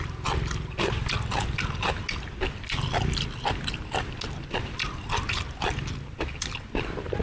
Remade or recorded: recorded